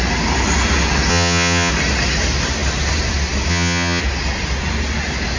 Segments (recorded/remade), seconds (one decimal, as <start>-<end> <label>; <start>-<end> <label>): 0.0-1.1 recorded; 1.1-1.7 remade; 1.7-3.5 recorded; 3.5-4.0 remade; 4.0-5.4 recorded